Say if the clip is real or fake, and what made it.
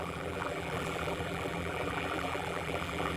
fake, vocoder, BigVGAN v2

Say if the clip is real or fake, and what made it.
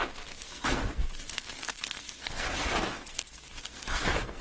fake, codec, SNAC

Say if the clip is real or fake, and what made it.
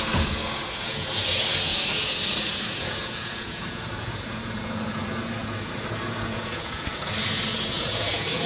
fake, vocoder, Vocos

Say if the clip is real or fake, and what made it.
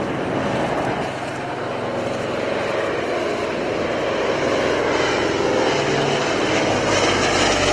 real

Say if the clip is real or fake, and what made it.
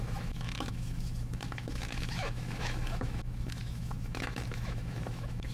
fake, autoencoder, DAC-VAE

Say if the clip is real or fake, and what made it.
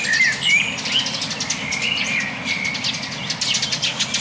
real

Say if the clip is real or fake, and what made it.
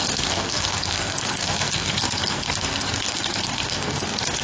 fake, codec, SNAC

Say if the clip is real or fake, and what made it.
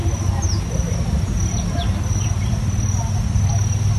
real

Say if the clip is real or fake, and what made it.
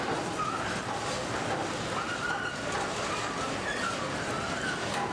real